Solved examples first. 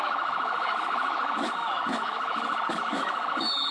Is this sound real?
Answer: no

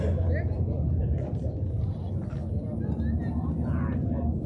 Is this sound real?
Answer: yes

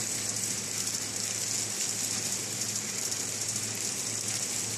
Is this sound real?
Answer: yes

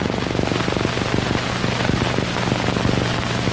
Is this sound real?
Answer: yes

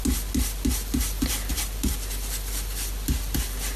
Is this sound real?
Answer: yes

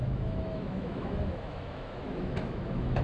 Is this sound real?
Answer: no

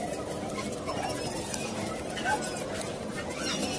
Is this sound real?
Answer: yes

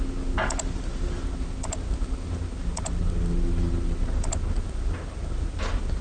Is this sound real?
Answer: yes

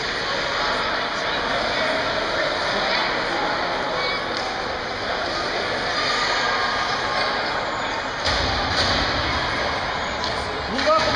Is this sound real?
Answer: yes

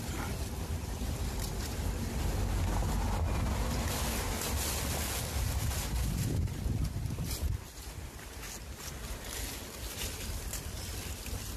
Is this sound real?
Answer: yes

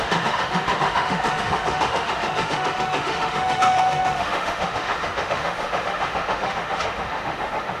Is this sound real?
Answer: no